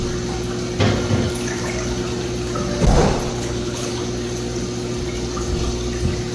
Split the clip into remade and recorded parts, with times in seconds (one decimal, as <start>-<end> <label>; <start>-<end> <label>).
0.0-3.3 recorded; 3.3-3.9 remade; 3.9-6.3 recorded